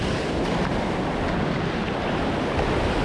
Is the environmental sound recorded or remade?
recorded